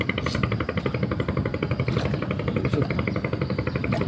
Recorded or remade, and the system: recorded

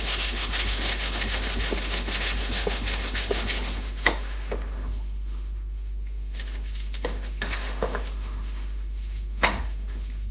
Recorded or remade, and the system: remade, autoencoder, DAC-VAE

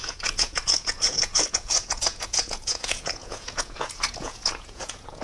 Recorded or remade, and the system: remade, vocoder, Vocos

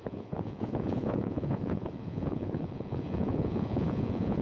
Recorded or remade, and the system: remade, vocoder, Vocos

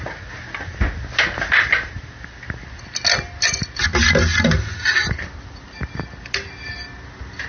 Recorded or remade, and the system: recorded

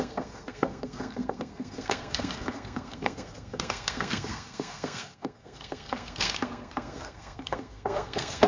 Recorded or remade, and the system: remade, codec, SNAC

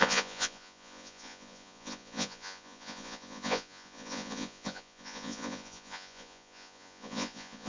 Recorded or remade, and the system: remade, vocoder, Vocos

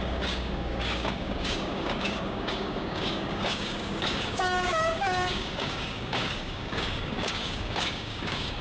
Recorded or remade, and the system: remade, codec, DAC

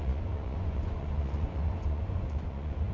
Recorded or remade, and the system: remade, vocoder, Vocos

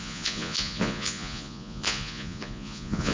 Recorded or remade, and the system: remade, vocoder, Vocos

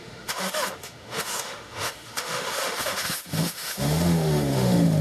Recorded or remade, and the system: remade, autoencoder, DAC-VAE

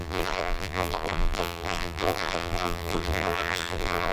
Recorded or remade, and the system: remade, vocoder, BigVGAN v2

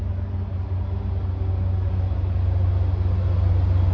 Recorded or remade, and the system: recorded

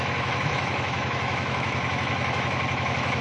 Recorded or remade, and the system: remade, autoencoder, DAC-VAE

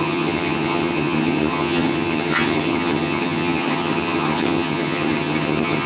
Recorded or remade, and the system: remade, vocoder, HiFi-GAN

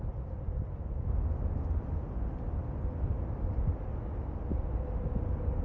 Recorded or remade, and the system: recorded